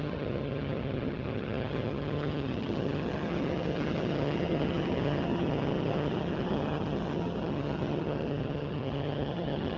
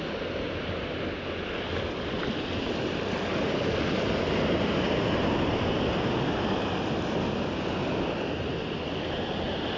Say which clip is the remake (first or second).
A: first